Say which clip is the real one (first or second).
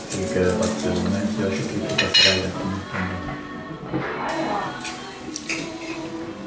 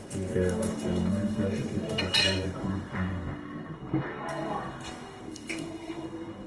first